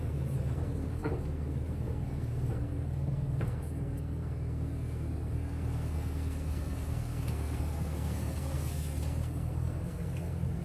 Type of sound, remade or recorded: remade